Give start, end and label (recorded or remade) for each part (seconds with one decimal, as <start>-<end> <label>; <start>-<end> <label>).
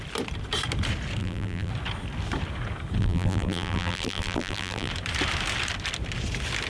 0.0-1.2 recorded; 1.2-1.7 remade; 1.7-3.0 recorded; 3.0-4.9 remade; 4.9-6.7 recorded